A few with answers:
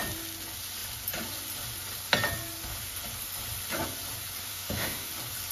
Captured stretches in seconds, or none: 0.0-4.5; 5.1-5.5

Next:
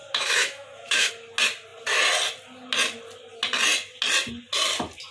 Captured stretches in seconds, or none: 1.1-5.1

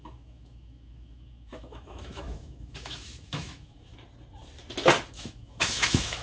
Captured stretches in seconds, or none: 3.9-5.1